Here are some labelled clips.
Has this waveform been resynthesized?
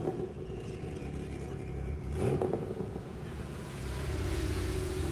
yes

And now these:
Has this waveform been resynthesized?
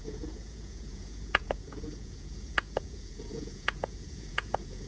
yes